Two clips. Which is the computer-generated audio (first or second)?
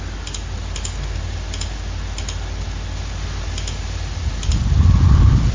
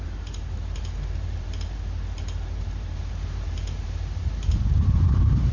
second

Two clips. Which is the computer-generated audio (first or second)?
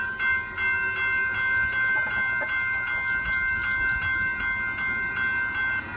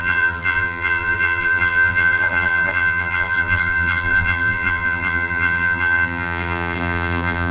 second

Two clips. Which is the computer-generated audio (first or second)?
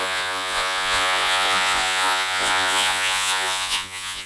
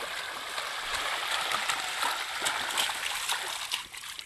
first